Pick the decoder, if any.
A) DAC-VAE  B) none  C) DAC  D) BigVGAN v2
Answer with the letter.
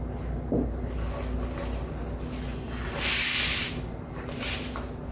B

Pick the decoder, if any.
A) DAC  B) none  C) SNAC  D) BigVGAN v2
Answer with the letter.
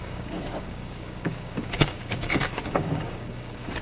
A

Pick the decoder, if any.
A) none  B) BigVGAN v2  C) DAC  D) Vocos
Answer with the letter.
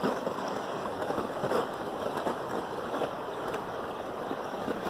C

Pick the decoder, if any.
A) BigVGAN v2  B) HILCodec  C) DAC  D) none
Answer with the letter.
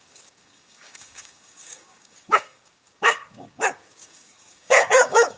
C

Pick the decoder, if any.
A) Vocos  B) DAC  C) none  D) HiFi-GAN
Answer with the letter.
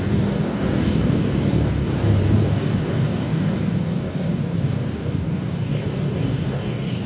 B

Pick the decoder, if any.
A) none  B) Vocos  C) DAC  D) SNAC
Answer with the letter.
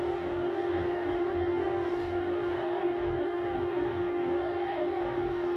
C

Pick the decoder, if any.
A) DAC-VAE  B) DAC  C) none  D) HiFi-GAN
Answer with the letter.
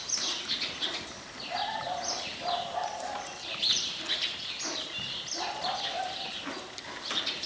C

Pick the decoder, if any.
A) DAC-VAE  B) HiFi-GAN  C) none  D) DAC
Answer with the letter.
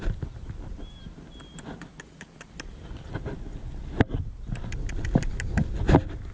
C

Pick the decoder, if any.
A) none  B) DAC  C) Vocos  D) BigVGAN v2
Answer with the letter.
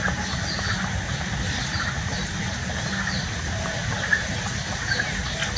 A